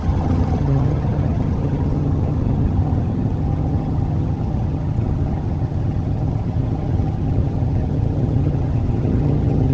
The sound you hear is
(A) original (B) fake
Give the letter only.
B